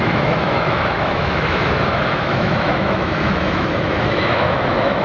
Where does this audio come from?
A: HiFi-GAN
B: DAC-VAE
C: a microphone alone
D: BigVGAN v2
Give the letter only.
B